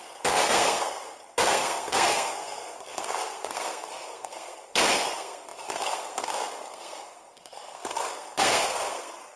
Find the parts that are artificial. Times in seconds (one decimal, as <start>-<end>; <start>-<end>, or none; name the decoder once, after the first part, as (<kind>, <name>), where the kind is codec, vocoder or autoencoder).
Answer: 0.0-9.4 (codec, SNAC)